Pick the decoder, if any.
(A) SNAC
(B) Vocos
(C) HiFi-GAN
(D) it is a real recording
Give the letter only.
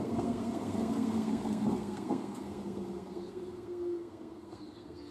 A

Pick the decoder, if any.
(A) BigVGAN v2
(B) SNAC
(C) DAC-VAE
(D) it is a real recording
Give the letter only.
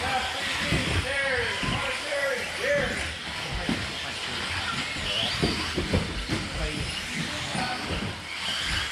D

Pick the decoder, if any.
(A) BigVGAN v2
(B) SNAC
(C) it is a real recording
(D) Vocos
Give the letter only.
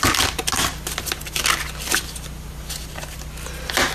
C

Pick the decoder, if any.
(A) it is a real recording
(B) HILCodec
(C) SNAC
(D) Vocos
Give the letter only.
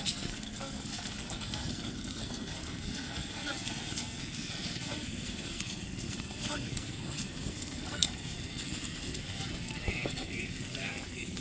C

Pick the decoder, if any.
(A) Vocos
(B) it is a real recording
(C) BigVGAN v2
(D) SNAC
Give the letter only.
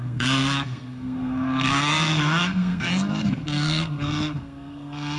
D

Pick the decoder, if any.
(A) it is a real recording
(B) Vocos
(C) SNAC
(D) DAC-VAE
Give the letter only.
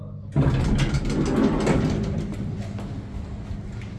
A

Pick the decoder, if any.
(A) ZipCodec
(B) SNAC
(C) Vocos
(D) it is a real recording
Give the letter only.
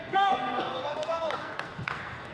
B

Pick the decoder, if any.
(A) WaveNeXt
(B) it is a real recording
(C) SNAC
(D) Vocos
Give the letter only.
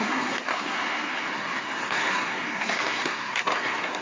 C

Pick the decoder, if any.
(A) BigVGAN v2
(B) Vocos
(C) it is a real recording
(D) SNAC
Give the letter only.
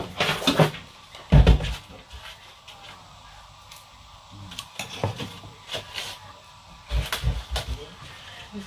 C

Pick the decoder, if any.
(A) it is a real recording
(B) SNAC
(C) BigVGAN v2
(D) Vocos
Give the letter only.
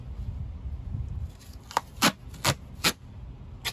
A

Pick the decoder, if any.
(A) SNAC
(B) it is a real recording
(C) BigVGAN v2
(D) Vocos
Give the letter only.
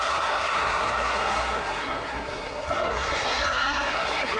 A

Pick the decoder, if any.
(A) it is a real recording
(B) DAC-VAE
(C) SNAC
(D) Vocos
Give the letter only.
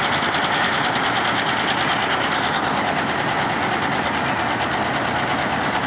A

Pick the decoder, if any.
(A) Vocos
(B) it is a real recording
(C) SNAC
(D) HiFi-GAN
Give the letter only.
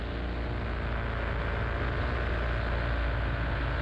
B